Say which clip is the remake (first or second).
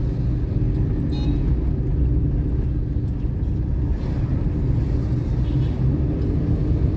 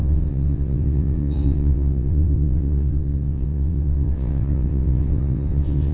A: second